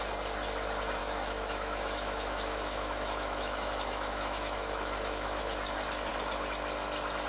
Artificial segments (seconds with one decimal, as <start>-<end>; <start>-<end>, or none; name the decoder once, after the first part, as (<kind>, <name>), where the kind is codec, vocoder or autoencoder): 1.0-5.4 (autoencoder, DAC-VAE)